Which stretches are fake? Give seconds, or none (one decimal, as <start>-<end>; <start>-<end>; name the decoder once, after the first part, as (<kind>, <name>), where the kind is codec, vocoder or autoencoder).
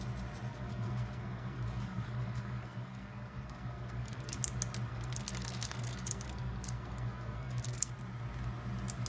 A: 0.5-4.4 (codec, SNAC); 4.9-7.9